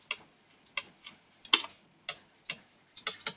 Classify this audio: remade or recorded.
recorded